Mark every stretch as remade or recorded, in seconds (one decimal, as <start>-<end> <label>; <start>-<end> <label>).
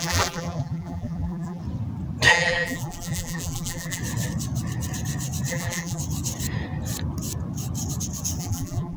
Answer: 0.0-1.6 remade; 1.6-2.3 recorded; 2.3-4.0 remade; 4.0-5.5 recorded; 5.5-6.0 remade; 6.0-8.4 recorded; 8.4-9.0 remade